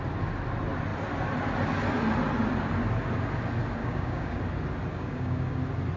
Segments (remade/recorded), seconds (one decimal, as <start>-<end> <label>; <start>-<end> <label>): 0.0-3.8 recorded; 3.8-4.4 remade; 4.4-4.9 recorded; 4.9-5.6 remade; 5.6-6.0 recorded